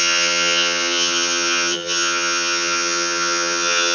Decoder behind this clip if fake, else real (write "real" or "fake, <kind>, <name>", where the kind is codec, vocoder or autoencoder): fake, vocoder, HiFi-GAN